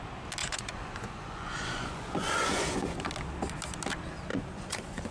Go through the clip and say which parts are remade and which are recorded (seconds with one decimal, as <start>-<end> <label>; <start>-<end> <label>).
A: 0.0-0.4 recorded; 0.4-3.1 remade; 3.1-4.3 recorded; 4.3-5.1 remade